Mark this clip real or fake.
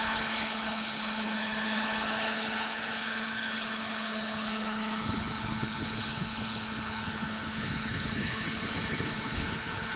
fake